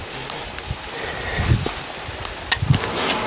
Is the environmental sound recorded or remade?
recorded